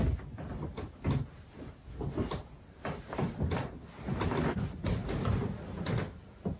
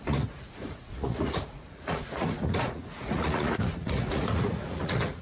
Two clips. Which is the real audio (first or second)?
first